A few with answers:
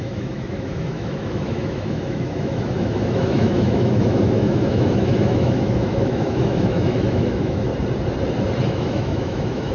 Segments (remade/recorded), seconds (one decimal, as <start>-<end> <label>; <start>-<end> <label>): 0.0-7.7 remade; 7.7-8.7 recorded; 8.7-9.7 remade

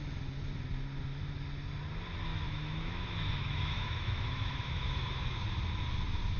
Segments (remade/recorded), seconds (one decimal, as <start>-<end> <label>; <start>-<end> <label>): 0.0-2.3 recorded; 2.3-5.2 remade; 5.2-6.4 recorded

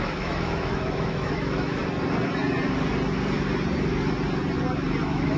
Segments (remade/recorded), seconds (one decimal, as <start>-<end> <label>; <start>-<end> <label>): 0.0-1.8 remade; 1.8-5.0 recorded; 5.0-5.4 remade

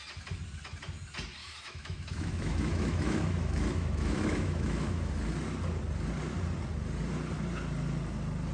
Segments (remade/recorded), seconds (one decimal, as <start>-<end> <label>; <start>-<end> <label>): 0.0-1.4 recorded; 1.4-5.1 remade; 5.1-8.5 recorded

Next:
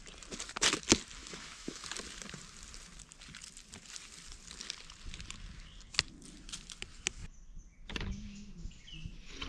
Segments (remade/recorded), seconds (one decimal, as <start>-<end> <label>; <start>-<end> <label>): 0.0-1.2 recorded; 1.2-1.8 remade; 1.8-9.5 recorded

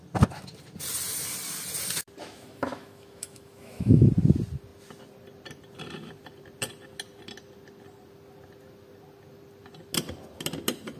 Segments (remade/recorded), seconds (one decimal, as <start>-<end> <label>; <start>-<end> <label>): 0.0-2.2 recorded; 2.2-4.1 remade; 4.1-11.0 recorded

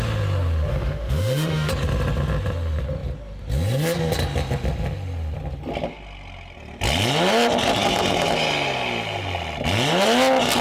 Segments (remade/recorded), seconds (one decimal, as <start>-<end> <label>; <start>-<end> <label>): 0.0-0.7 recorded; 0.7-1.7 remade; 1.7-10.6 recorded

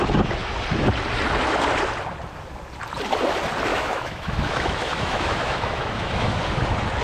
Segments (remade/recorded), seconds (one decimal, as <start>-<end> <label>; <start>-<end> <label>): 0.0-3.7 recorded; 3.7-6.4 remade; 6.4-7.0 recorded